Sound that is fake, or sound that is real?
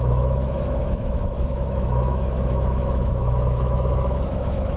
fake